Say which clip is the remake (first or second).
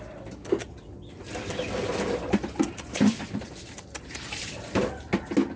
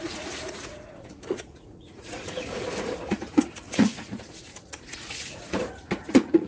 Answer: second